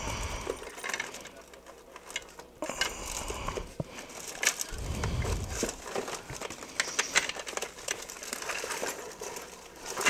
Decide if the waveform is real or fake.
real